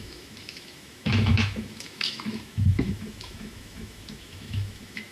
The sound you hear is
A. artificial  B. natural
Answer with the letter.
A